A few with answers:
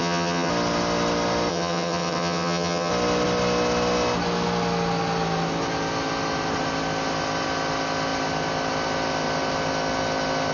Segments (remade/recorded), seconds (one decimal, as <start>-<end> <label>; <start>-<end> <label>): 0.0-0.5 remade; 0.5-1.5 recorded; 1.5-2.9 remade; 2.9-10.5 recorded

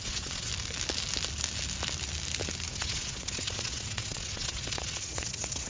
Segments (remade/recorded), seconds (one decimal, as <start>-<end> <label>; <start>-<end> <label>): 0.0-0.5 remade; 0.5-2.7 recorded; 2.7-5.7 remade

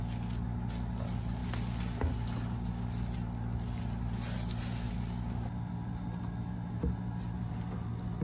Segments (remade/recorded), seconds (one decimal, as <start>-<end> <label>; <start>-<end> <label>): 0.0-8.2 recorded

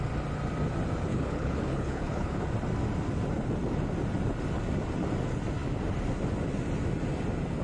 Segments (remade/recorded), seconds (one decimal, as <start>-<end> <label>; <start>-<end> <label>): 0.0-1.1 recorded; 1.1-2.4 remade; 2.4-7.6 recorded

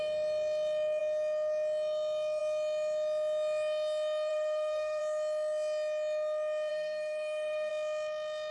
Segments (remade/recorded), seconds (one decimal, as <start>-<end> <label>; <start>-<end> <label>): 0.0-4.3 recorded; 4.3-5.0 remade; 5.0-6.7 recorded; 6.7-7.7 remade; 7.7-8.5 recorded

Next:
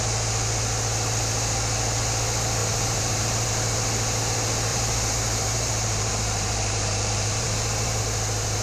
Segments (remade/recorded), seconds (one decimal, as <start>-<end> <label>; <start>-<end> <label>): 0.0-2.6 recorded; 2.6-3.5 remade; 3.5-4.7 recorded; 4.7-8.0 remade; 8.0-8.6 recorded

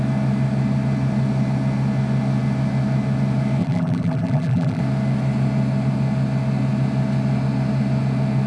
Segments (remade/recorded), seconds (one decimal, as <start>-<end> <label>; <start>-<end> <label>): 0.0-3.6 recorded; 3.6-4.8 remade; 4.8-8.5 recorded